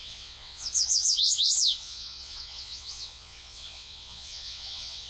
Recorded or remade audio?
remade